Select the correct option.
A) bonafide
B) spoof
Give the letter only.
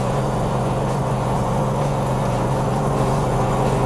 B